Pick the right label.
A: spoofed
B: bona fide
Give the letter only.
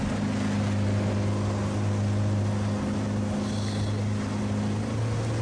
B